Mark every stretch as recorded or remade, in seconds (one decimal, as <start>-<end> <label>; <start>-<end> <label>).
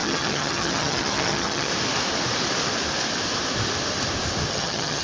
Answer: 0.0-1.7 remade; 1.7-4.5 recorded; 4.5-5.0 remade